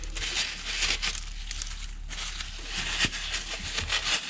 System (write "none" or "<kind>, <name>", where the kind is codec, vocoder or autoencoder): none